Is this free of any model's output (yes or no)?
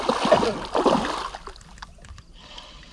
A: yes